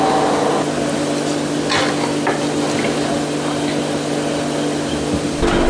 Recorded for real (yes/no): yes